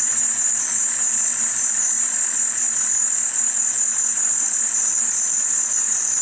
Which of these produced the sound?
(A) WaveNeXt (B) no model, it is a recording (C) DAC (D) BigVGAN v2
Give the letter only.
D